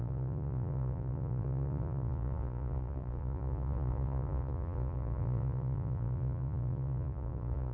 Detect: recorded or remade remade